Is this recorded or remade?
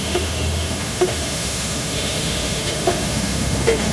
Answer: remade